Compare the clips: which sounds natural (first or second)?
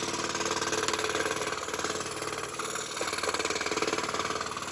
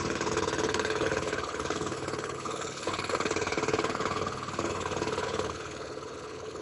first